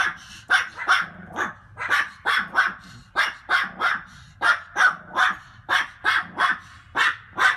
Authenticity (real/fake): real